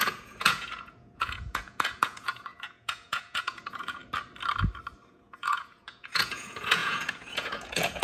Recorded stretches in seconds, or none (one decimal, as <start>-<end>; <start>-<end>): 4.0-5.1